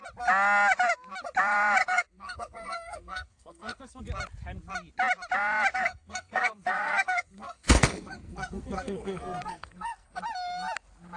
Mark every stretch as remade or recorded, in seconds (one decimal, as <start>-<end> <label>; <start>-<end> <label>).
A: 0.0-1.8 recorded; 1.8-4.0 remade; 4.0-5.7 recorded; 5.7-10.2 remade; 10.2-11.2 recorded